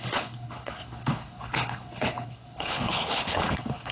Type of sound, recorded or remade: remade